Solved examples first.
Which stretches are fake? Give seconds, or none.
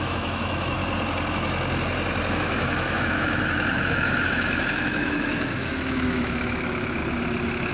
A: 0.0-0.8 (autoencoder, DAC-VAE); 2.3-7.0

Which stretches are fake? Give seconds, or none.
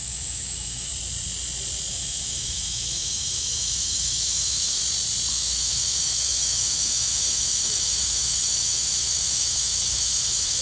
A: 0.0-0.9 (autoencoder, DAC-VAE); 1.9-4.8; 5.3-10.6